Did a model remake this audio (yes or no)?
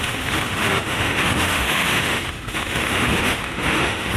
yes